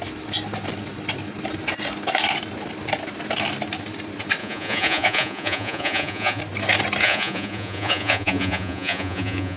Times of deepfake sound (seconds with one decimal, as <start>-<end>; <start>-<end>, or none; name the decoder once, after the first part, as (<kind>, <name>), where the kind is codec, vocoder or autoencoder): 4.4-6.4 (vocoder, Vocos); 7.0-9.6